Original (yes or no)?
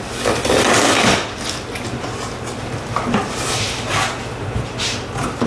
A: yes